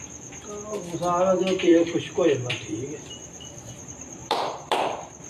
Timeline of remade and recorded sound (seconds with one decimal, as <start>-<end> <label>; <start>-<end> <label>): 0.0-1.7 recorded; 1.7-3.8 remade; 3.8-4.2 recorded; 4.2-4.8 remade; 4.8-5.3 recorded